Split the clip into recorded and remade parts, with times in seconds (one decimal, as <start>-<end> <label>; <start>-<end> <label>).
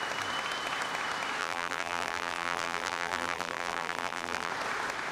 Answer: 0.0-1.4 recorded; 1.4-4.5 remade; 4.5-5.1 recorded